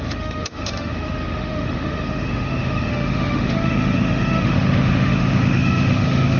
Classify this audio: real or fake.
fake